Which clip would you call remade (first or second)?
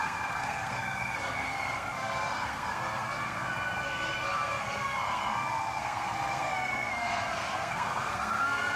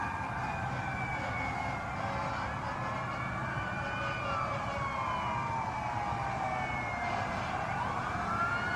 first